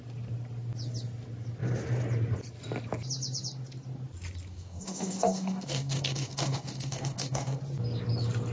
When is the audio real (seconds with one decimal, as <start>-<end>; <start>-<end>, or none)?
0.0-4.5; 7.6-8.5